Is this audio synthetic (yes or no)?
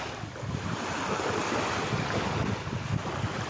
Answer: no